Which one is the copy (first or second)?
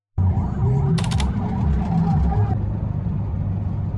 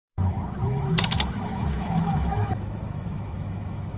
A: second